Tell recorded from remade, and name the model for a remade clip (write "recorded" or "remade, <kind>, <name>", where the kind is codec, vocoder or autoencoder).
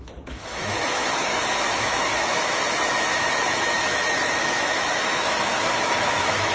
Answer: remade, autoencoder, DAC-VAE